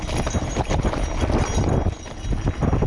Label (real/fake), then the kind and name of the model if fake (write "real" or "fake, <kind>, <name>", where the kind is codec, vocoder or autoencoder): real